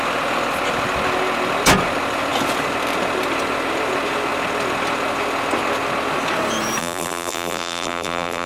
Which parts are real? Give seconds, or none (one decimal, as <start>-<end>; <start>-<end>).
0.0-6.8

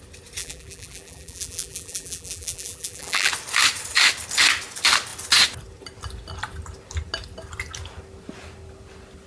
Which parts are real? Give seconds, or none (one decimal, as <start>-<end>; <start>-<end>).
0.0-0.4; 3.3-9.3

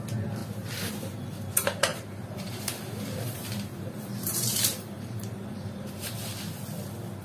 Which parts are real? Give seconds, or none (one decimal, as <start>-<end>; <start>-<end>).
0.0-0.4; 0.9-1.9; 6.2-7.2

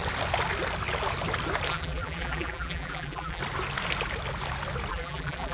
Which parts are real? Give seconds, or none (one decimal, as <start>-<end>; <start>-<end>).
0.0-1.7; 3.4-4.9

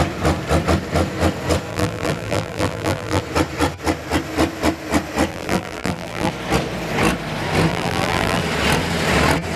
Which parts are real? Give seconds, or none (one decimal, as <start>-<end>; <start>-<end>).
0.0-1.7; 3.2-5.3; 6.3-7.7; 8.4-9.6

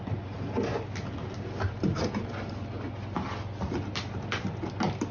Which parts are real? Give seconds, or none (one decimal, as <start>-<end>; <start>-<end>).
0.0-5.1